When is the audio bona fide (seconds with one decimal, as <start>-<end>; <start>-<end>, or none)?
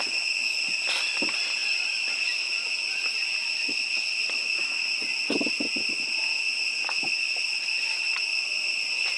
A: 0.0-9.2